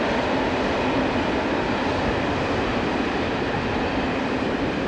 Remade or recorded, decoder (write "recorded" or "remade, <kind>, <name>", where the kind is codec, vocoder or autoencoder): recorded